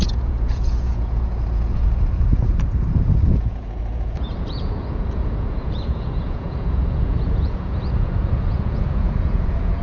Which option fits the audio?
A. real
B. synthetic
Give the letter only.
B